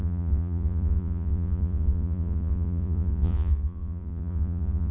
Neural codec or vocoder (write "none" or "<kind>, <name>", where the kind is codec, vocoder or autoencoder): vocoder, Vocos